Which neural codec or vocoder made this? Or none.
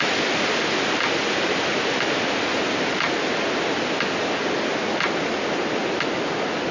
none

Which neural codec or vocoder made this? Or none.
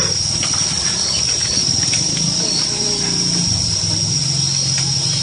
none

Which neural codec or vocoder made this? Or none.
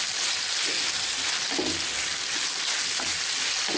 none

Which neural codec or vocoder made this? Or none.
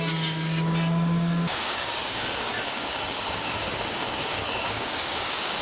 codec, DAC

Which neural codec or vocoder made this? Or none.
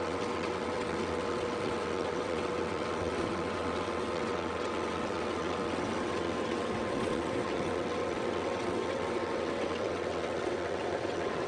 vocoder, WaveNeXt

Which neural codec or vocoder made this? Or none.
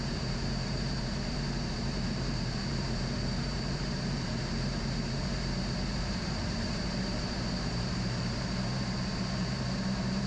vocoder, BigVGAN v2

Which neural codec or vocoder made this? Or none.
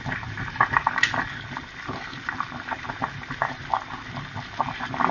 none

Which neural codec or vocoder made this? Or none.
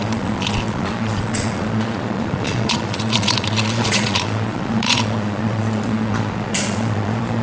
vocoder, Vocos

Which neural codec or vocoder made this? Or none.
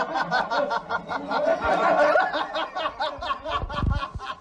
none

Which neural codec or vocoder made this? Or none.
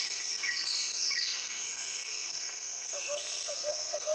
codec, SNAC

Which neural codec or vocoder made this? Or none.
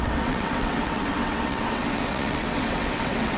vocoder, WaveNeXt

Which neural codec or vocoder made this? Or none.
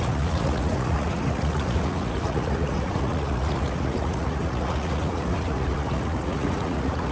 vocoder, Vocos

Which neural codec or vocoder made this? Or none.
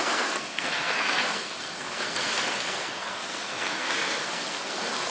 codec, SNAC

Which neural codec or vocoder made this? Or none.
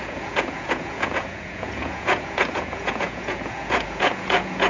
vocoder, Vocos